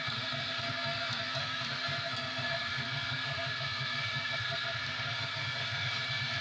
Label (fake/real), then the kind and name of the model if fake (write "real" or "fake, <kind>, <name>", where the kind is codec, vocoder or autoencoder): fake, codec, SNAC